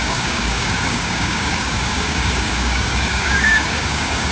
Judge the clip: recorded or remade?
remade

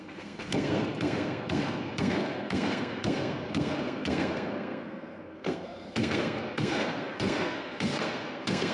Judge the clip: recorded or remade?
remade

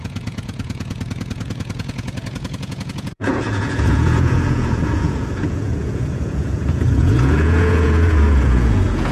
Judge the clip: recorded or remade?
remade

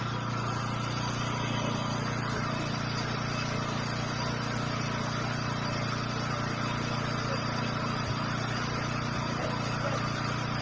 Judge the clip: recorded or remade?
recorded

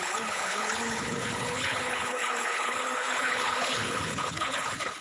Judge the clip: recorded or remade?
remade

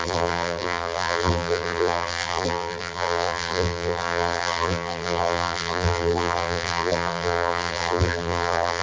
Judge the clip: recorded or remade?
remade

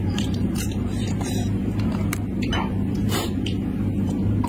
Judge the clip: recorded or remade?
remade